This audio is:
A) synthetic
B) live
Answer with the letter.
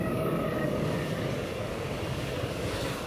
A